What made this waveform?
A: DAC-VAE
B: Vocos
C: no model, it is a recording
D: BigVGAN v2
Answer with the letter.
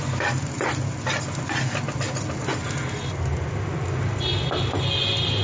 C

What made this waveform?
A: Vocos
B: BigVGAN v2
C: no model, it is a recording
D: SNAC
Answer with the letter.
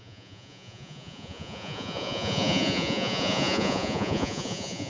A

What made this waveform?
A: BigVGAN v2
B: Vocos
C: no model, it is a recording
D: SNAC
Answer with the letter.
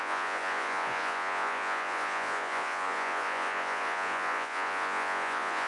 B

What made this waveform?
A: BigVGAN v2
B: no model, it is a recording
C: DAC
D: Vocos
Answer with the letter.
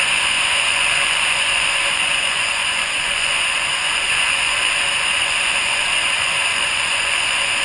D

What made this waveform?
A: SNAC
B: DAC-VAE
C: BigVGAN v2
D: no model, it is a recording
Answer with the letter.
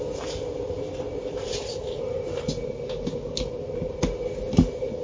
D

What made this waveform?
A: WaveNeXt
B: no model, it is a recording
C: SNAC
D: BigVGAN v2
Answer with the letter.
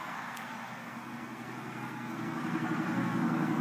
C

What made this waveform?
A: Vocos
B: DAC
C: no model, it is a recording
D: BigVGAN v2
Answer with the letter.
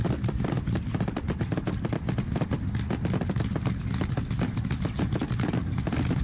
C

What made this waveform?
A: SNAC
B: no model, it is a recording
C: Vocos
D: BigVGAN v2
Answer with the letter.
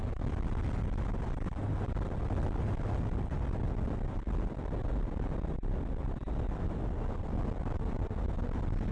B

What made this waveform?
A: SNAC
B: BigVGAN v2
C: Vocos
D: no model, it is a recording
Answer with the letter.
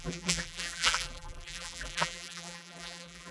B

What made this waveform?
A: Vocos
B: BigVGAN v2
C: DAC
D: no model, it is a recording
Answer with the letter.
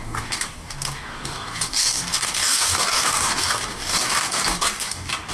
C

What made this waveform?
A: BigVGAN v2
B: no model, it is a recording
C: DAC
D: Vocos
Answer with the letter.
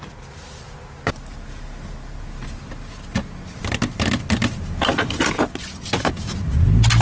B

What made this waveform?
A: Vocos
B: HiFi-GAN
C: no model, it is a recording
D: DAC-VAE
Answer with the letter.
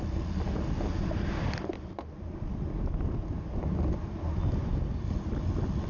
C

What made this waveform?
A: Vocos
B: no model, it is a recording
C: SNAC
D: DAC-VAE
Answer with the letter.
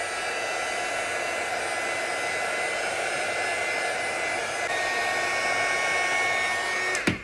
B